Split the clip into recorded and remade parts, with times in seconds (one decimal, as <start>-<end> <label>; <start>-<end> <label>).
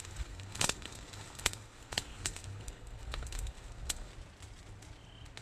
0.0-4.1 remade; 4.1-5.4 recorded